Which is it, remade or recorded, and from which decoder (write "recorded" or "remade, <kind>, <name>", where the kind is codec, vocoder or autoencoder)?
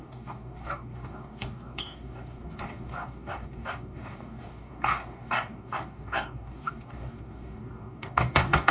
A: remade, codec, DAC